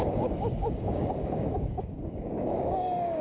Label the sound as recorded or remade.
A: remade